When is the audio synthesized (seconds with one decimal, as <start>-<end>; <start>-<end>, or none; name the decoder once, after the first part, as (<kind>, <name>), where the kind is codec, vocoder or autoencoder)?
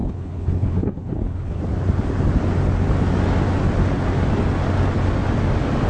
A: 0.0-1.6 (codec, HILCodec)